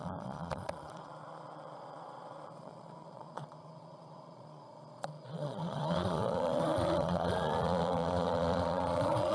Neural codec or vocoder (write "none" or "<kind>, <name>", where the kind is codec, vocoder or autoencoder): vocoder, Vocos